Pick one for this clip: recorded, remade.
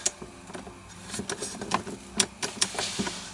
recorded